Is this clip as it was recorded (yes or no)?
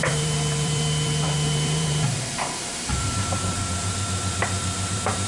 no